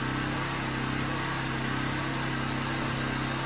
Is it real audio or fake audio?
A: real